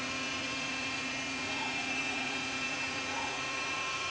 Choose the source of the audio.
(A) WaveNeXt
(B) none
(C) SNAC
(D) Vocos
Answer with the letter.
D